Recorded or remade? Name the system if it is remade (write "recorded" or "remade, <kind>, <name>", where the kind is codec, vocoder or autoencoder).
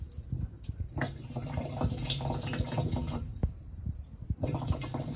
remade, vocoder, BigVGAN v2